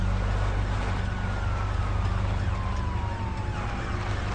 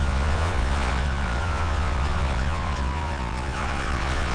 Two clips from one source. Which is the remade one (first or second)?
second